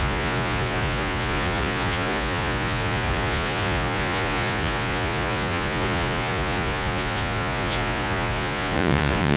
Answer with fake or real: fake